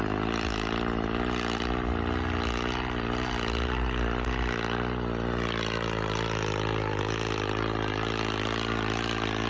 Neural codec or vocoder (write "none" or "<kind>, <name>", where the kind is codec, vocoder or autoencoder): none